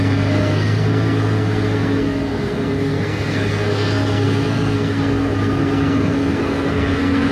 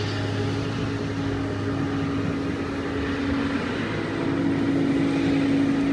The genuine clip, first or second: second